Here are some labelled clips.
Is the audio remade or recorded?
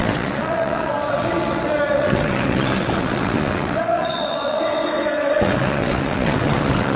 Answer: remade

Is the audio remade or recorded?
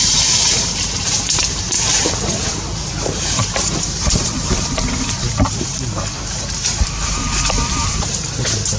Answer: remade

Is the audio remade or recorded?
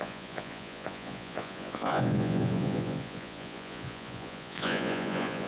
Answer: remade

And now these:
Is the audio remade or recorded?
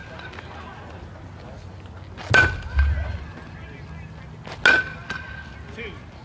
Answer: recorded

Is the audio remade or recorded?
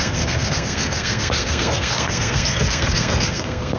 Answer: remade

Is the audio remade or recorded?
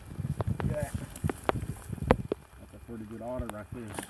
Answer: recorded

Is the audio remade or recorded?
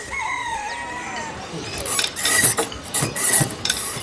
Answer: recorded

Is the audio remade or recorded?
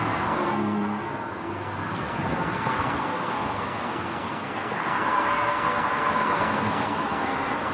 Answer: remade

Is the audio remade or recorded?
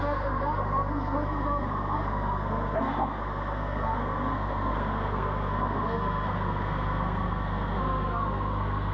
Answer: remade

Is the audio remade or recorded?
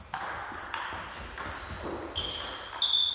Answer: recorded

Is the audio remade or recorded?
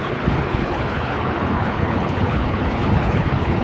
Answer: remade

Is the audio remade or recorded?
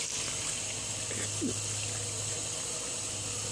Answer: recorded